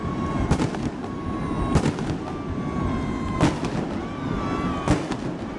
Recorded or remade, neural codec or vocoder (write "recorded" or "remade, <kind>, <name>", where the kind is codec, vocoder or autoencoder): recorded